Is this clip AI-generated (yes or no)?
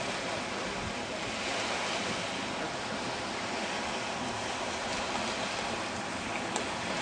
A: no